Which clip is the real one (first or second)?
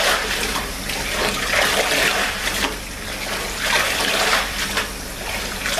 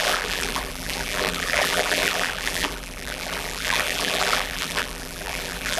first